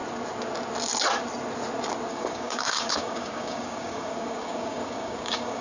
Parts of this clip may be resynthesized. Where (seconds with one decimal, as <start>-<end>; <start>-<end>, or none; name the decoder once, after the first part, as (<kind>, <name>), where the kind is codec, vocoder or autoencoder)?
2.1-5.6 (codec, DAC)